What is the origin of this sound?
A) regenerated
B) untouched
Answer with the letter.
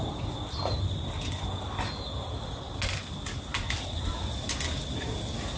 B